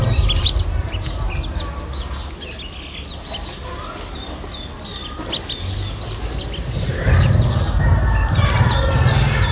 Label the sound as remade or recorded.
recorded